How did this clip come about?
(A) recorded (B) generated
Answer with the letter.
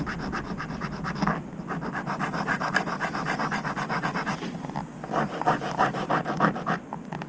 A